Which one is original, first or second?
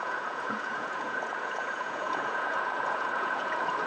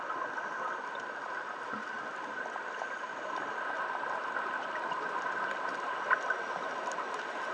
second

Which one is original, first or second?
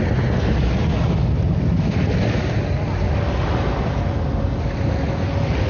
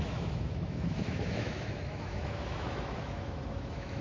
first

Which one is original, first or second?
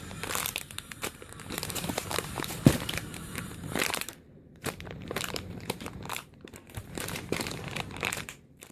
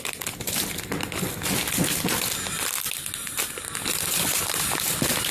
second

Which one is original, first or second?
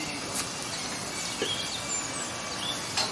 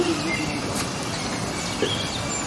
first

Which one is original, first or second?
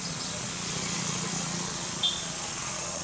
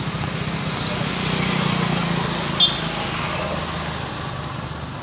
second